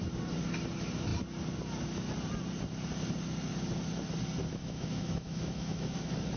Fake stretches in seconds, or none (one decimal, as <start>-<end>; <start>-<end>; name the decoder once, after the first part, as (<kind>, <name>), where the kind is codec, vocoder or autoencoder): 4.6-6.0 (autoencoder, DAC-VAE)